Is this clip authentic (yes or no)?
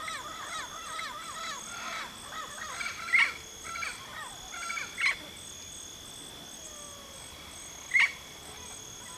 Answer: yes